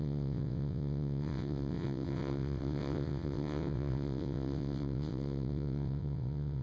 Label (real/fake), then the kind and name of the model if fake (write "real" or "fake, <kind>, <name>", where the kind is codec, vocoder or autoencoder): fake, vocoder, WaveNeXt